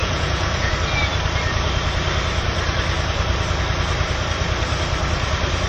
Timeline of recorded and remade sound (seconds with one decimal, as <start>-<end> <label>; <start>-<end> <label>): 0.0-0.7 remade; 0.7-5.7 recorded